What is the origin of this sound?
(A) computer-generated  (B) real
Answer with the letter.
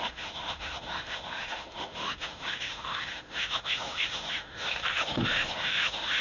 A